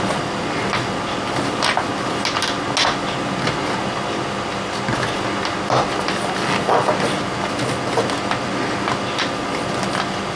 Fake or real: real